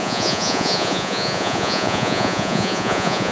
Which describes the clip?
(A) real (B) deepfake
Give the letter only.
B